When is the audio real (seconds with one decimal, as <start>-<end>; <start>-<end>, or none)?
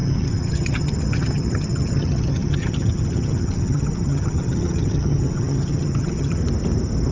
6.4-7.1